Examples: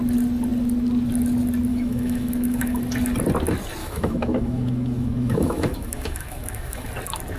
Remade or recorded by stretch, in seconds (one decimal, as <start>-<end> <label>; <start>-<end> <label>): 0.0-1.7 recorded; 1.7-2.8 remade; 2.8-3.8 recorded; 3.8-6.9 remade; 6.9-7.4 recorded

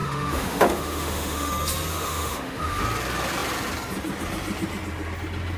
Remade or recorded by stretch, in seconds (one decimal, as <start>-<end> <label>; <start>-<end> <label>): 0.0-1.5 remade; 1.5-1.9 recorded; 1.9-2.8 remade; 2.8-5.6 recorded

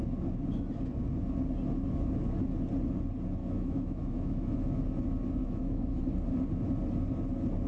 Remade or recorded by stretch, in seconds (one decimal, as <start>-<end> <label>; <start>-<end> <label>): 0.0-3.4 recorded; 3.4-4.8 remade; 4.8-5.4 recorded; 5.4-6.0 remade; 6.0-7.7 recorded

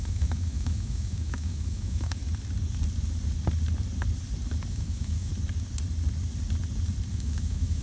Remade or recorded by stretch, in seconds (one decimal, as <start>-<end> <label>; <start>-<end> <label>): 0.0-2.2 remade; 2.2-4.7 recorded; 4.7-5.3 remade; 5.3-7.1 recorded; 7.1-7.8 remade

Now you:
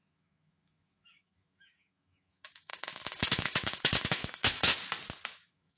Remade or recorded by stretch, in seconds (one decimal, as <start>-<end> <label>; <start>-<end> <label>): 0.0-4.7 remade; 4.7-5.3 recorded; 5.3-5.8 remade

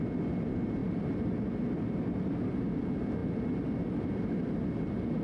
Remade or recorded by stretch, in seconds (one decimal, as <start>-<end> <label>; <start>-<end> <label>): 0.0-5.2 recorded

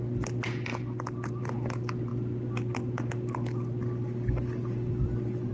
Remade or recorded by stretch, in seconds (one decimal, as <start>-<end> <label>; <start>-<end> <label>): 0.0-5.5 recorded

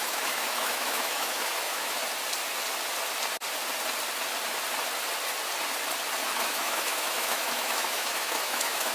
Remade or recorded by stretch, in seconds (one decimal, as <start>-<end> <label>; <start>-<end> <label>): 0.0-2.0 remade; 2.0-6.3 recorded; 6.3-8.9 remade